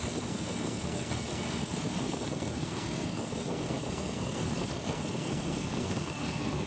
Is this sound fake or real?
fake